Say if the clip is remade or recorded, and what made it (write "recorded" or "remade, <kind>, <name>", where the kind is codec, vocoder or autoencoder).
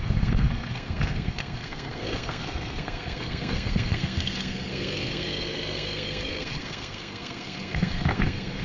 remade, codec, SNAC